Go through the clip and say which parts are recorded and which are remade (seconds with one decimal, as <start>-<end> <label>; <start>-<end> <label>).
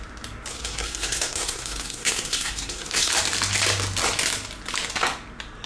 0.0-0.5 recorded; 0.5-3.1 remade; 3.1-5.7 recorded